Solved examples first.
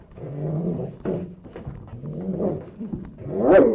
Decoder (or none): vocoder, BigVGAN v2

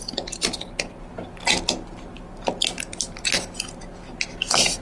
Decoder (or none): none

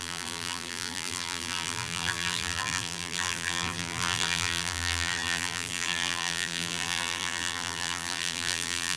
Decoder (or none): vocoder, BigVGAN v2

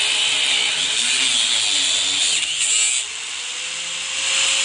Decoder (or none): none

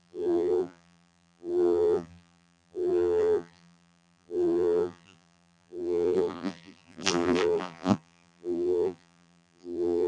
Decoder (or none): vocoder, BigVGAN v2